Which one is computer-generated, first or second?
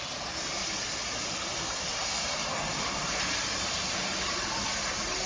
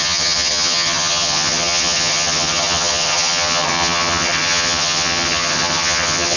second